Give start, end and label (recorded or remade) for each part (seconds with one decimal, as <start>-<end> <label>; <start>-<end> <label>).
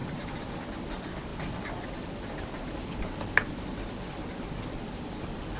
0.0-5.6 recorded